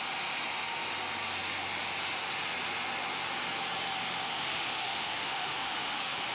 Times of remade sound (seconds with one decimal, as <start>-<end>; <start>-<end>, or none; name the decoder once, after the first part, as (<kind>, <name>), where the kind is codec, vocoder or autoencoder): 4.2-6.3 (autoencoder, DAC-VAE)